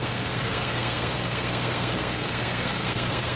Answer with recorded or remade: remade